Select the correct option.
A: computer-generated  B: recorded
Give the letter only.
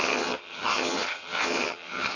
A